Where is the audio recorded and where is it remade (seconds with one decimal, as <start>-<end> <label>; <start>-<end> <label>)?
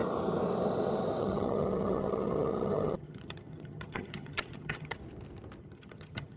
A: 0.0-1.2 recorded; 1.2-5.0 remade; 5.0-5.6 recorded; 5.6-6.4 remade